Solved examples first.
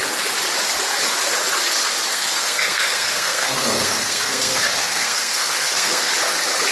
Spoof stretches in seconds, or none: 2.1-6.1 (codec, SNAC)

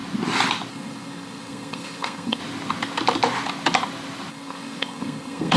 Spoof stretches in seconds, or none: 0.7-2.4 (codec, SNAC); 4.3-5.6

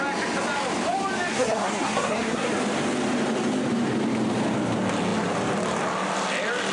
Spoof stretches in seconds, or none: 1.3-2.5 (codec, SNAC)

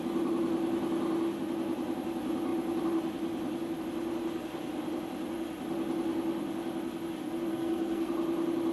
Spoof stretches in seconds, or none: 7.5-8.1 (codec, SNAC)

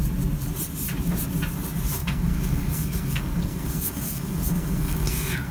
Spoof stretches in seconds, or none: 2.0-5.5 (codec, SNAC)

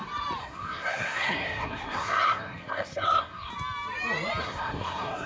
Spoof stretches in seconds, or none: 0.4-3.5 (codec, SNAC); 4.4-5.3